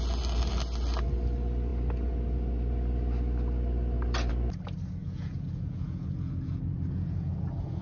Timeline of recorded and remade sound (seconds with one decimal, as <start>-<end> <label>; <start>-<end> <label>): 0.0-5.0 recorded; 5.0-7.8 remade